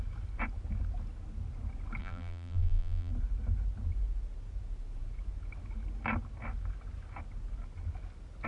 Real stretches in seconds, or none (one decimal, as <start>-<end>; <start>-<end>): 0.0-2.0; 3.1-8.5